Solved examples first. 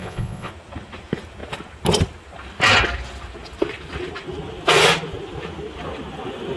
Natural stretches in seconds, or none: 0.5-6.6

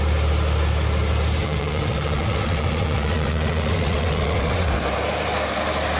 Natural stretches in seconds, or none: 0.0-1.4; 4.8-6.0

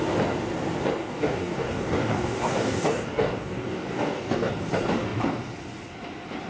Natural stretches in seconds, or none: 0.0-1.0; 4.5-6.5

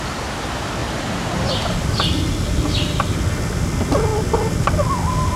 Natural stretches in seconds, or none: 0.0-0.8; 1.5-5.4

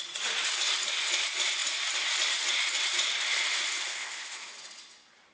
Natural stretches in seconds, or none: 0.0-3.9; 4.5-5.3

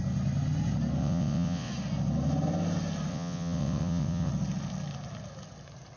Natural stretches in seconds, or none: 0.0-1.0; 1.7-3.1; 4.3-6.0